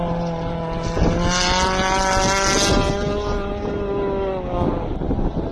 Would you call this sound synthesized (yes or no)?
no